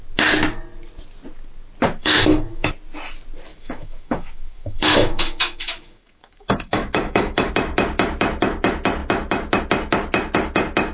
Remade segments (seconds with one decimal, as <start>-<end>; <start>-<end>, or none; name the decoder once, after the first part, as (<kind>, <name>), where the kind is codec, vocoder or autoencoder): 2.0-2.7 (autoencoder, DAC-VAE); 3.5-7.5